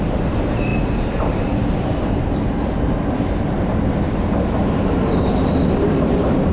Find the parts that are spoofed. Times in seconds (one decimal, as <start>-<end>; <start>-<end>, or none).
none